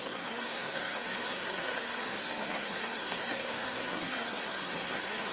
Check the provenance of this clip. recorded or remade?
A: remade